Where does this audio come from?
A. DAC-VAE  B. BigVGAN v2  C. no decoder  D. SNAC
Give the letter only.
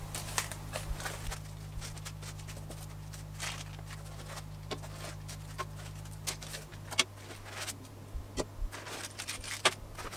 C